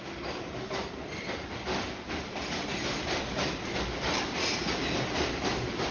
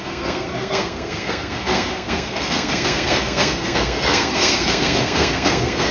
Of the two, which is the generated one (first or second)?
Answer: second